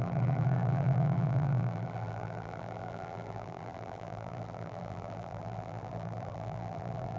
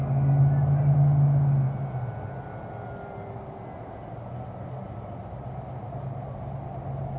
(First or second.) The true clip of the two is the second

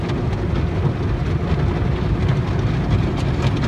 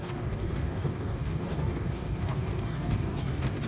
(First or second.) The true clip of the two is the first